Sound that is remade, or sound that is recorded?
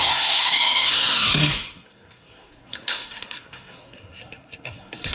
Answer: remade